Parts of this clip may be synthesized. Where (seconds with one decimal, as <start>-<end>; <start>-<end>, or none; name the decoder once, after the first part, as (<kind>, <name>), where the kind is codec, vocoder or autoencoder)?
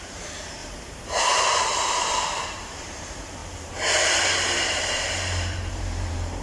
0.0-6.4 (vocoder, BigVGAN v2)